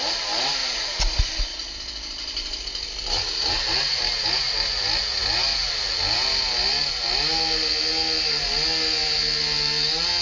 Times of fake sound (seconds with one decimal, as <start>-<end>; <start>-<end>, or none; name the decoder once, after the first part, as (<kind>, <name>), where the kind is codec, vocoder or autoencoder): 0.6-4.5 (vocoder, BigVGAN v2)